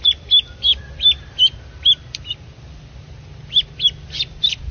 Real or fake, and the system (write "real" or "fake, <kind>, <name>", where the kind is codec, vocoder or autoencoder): real